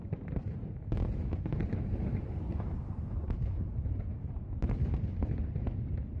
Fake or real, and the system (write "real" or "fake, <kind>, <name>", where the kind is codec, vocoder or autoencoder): fake, vocoder, BigVGAN v2